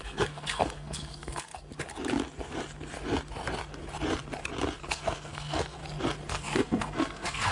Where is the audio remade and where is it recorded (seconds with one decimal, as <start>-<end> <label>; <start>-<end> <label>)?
0.0-1.5 remade; 1.5-4.8 recorded; 4.8-5.8 remade; 5.8-6.3 recorded; 6.3-7.5 remade